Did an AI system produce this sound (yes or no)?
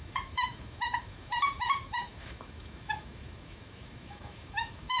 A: yes